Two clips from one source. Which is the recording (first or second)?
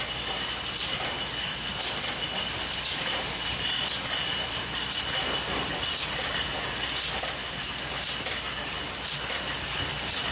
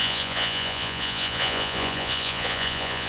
first